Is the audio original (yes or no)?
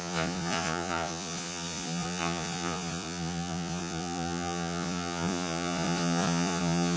no